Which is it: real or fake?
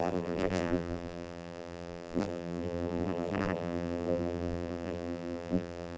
fake